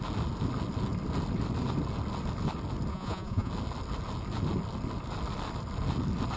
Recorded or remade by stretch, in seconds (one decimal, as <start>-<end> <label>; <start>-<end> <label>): 0.0-2.9 recorded; 2.9-3.5 remade; 3.5-6.4 recorded